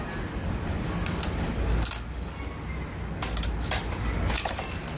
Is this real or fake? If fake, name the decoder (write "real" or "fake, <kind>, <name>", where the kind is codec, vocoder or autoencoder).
real